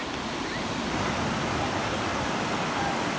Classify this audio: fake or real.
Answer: real